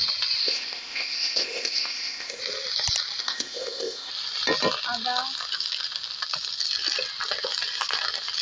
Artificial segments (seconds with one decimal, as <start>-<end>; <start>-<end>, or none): 0.4-2.4; 3.2-4.1